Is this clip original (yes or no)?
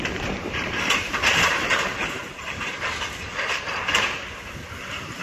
no